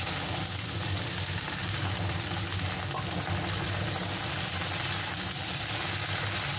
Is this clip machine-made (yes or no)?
no